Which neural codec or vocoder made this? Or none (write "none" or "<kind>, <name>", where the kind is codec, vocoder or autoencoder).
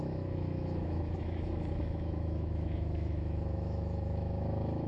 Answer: autoencoder, DAC-VAE